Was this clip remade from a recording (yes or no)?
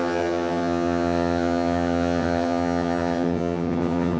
yes